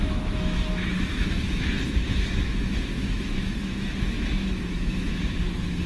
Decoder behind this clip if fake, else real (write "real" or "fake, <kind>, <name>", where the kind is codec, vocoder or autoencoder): fake, autoencoder, DAC-VAE